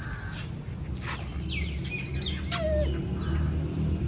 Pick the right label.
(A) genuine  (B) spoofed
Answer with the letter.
A